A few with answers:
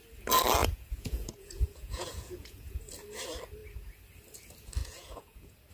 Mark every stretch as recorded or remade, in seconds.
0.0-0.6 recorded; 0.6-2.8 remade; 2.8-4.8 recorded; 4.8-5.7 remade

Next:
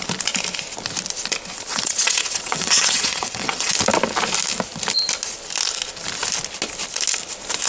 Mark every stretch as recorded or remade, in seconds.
0.0-1.7 recorded; 1.7-3.7 remade; 3.7-7.7 recorded

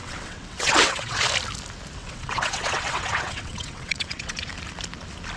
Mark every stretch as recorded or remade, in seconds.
0.0-1.2 remade; 1.2-2.0 recorded; 2.0-4.5 remade; 4.5-5.4 recorded

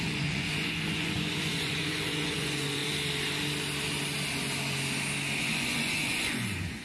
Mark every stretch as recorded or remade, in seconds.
0.0-2.8 remade; 2.8-5.4 recorded; 5.4-6.8 remade

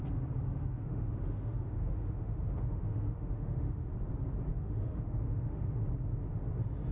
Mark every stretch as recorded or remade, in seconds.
0.0-0.6 recorded; 0.6-3.9 remade; 3.9-4.5 recorded; 4.5-5.8 remade; 5.8-6.9 recorded

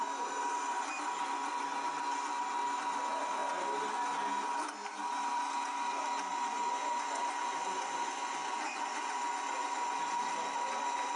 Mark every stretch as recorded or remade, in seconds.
0.0-6.3 recorded; 6.3-10.2 remade; 10.2-11.2 recorded